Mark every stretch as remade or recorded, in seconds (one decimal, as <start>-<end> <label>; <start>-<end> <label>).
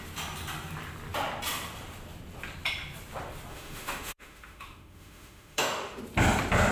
0.0-3.5 recorded; 3.5-6.0 remade; 6.0-6.7 recorded